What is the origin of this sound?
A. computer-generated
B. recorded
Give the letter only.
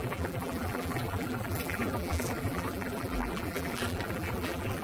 A